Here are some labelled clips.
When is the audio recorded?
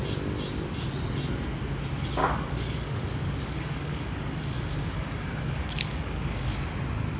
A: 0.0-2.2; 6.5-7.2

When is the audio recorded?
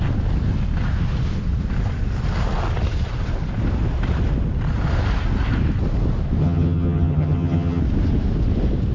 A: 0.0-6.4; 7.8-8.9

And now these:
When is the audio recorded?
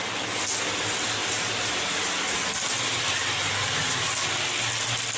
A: 0.0-5.2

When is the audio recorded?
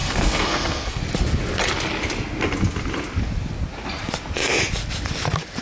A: 1.0-5.6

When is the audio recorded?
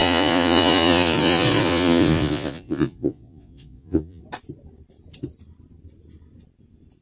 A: 4.2-7.0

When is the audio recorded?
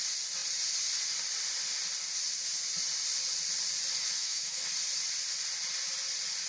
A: 0.0-4.0; 4.6-6.5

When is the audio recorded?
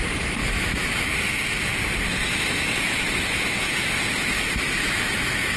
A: 0.0-0.4; 1.0-2.2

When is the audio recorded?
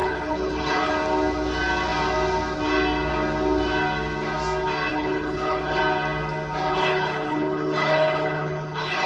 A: 0.9-4.9; 5.8-6.7